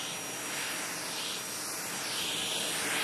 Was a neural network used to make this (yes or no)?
no